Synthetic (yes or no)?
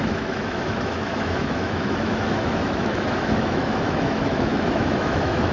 yes